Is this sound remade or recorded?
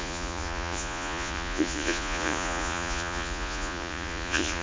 remade